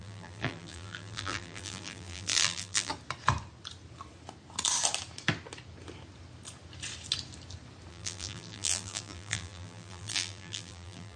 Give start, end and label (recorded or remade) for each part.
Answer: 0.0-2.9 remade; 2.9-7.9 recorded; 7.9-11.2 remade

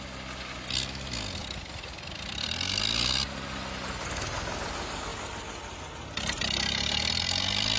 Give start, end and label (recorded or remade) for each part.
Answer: 0.0-7.8 recorded

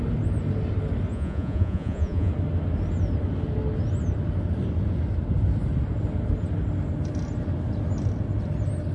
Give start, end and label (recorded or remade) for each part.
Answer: 0.0-1.1 recorded; 1.1-2.3 remade; 2.3-8.9 recorded

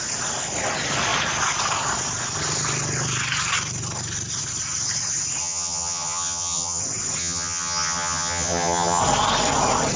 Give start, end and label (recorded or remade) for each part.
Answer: 0.0-5.4 recorded; 5.4-6.8 remade; 6.8-7.2 recorded; 7.2-9.0 remade; 9.0-10.0 recorded

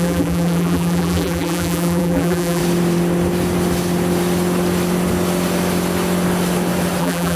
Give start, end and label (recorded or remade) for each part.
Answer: 0.0-2.6 remade; 2.6-7.0 recorded; 7.0-7.4 remade

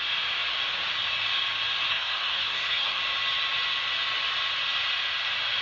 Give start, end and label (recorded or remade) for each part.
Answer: 0.0-1.9 recorded; 1.9-3.0 remade; 3.0-5.6 recorded

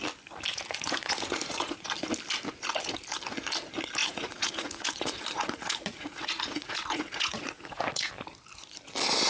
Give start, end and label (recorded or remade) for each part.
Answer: 0.0-0.5 recorded; 0.5-1.8 remade; 1.8-4.0 recorded; 4.0-8.1 remade; 8.1-9.3 recorded